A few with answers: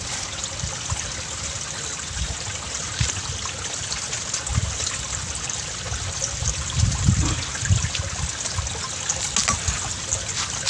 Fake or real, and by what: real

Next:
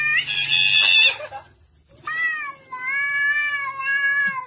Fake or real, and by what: real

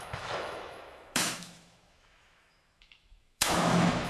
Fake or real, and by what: fake, autoencoder, DAC-VAE